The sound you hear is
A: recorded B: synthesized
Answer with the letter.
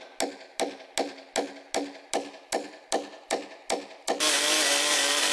A